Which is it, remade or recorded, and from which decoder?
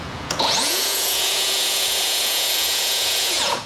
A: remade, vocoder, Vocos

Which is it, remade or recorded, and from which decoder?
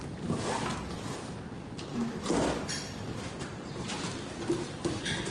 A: recorded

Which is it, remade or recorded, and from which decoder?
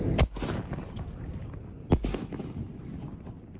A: recorded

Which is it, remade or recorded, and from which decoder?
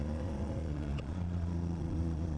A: remade, vocoder, Vocos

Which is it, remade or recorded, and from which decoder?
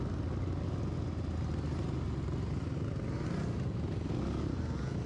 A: recorded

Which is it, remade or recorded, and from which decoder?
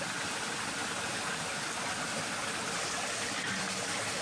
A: recorded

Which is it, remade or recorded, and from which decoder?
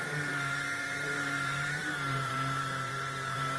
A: remade, vocoder, BigVGAN v2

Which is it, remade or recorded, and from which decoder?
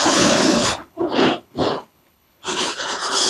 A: remade, codec, HILCodec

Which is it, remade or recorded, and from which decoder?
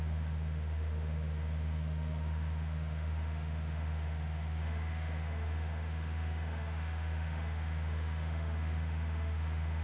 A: remade, autoencoder, DAC-VAE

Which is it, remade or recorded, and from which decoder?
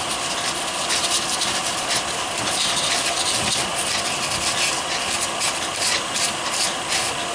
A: recorded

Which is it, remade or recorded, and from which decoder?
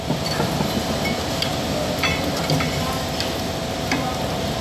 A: recorded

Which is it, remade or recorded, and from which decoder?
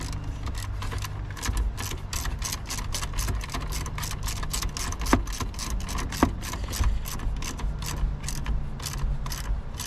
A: recorded